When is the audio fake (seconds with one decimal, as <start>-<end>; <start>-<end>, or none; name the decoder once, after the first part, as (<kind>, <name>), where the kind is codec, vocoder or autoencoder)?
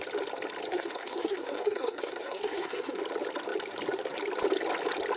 0.7-3.0 (codec, SNAC)